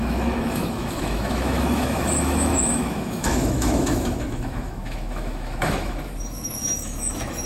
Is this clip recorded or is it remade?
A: remade